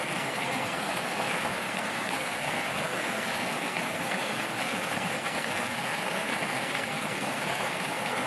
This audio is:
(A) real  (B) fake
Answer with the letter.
B